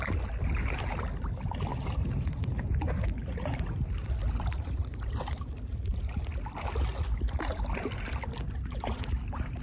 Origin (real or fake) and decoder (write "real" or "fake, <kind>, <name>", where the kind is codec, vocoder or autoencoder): real